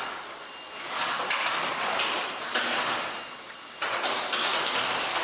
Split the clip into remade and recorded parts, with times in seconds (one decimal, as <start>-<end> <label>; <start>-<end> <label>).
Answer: 0.0-5.2 recorded